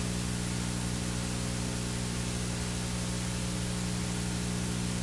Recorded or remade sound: recorded